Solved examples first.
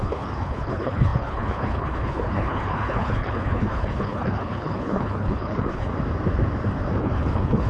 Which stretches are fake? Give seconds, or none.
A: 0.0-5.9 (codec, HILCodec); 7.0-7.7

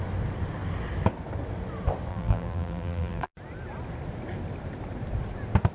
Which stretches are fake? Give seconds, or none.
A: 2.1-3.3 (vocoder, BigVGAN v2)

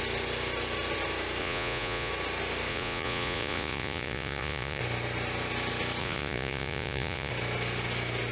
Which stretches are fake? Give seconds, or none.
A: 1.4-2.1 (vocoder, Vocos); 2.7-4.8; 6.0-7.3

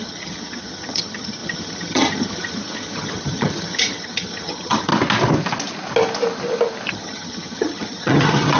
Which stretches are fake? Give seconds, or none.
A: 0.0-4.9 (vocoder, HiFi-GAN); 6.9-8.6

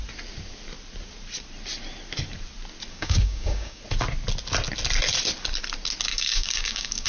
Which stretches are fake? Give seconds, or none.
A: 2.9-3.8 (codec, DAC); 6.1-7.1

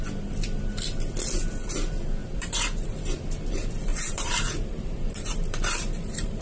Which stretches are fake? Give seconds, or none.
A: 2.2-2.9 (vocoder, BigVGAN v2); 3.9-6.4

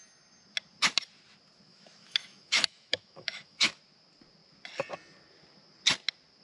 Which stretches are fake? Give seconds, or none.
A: 1.7-3.8 (autoencoder, DAC-VAE)